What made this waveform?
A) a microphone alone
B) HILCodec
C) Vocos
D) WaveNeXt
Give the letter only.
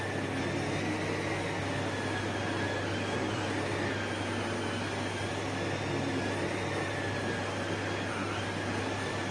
A